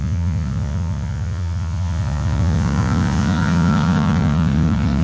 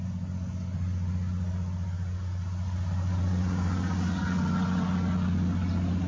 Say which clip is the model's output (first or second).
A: first